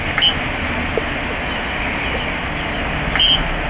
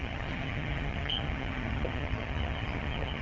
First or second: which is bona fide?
first